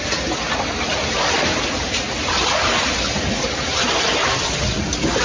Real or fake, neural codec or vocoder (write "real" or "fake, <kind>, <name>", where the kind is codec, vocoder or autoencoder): real